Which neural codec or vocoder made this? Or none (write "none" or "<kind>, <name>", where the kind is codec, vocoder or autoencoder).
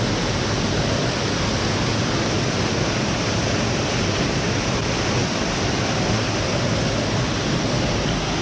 none